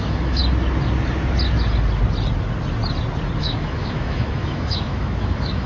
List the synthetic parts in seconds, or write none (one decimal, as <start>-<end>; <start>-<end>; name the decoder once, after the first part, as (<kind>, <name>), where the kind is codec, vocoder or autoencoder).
0.0-0.4 (autoencoder, DAC-VAE); 3.4-5.7